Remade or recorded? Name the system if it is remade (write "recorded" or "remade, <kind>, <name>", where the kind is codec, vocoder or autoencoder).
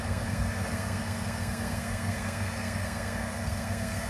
remade, codec, SNAC